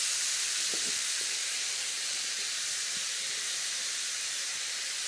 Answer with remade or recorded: remade